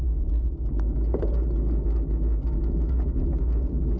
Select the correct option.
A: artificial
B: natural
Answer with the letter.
B